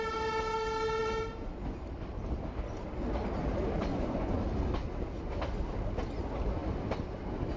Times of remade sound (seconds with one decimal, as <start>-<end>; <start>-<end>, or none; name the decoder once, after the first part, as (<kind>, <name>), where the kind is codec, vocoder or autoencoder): 3.9-4.4 (vocoder, Vocos)